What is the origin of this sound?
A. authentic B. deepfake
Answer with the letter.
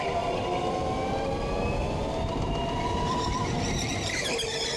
A